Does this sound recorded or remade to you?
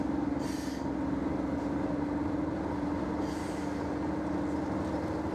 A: recorded